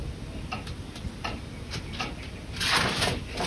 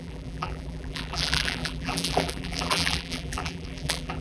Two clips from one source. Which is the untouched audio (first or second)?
first